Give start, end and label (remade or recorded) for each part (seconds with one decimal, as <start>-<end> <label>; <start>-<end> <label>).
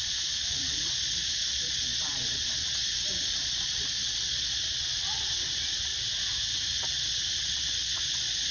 0.0-5.9 remade; 5.9-6.9 recorded; 6.9-8.5 remade